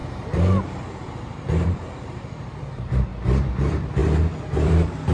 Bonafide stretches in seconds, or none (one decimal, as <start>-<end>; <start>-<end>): 3.1-3.6